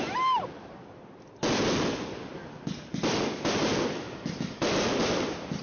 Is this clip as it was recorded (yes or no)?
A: yes